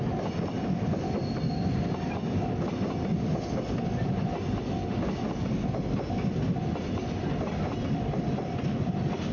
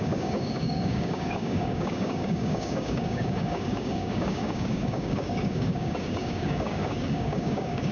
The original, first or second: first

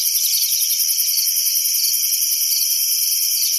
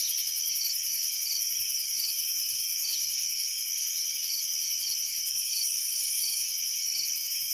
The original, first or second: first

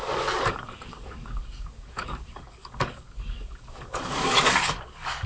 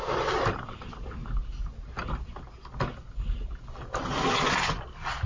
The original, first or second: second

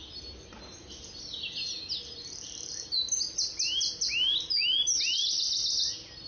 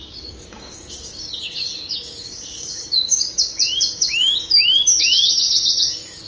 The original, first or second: first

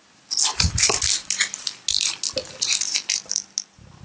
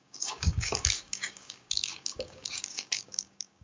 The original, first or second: first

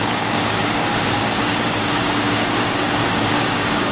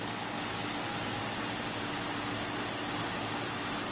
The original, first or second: second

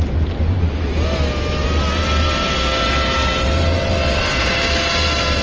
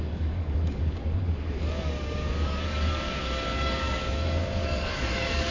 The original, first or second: first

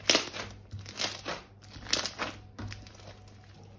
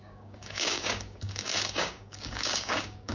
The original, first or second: first